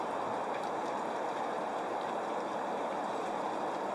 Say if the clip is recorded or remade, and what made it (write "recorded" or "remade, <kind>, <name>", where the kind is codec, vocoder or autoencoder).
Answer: remade, vocoder, BigVGAN v2